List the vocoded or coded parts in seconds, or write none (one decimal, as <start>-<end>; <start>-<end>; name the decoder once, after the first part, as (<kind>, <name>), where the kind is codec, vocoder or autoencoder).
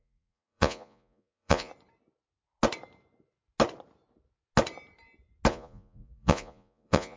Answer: 0.0-1.7 (vocoder, Vocos); 5.5-7.2